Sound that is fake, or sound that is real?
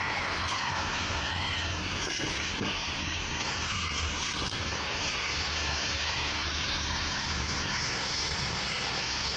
fake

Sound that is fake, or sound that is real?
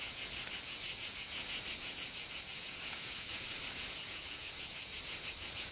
fake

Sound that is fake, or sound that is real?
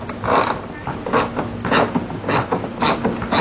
real